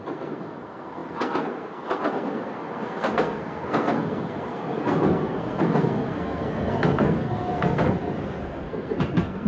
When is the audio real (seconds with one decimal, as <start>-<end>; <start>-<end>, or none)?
none